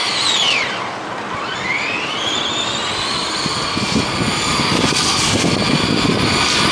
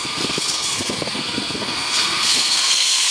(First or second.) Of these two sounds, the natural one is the first